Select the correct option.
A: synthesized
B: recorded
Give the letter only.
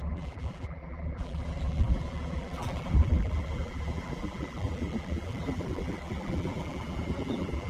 A